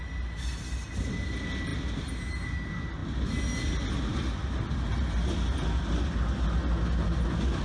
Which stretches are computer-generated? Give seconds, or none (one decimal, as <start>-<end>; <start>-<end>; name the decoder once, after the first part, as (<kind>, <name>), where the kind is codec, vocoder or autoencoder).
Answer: none